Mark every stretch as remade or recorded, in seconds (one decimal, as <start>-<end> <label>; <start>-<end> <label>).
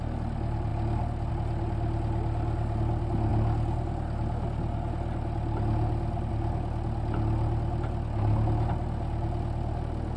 0.0-10.2 recorded